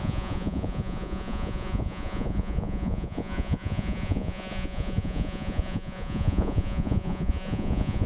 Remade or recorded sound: remade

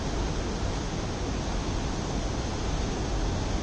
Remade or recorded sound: recorded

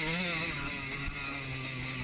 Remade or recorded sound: recorded